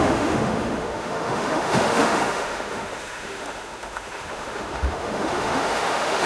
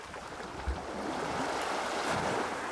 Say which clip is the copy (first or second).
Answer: first